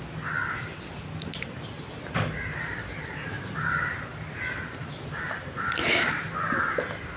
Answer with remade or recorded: recorded